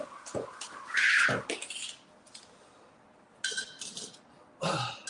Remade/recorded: recorded